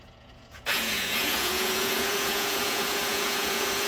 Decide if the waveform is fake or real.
fake